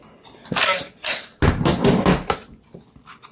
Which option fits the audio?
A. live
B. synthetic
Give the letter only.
A